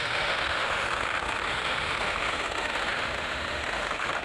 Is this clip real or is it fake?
fake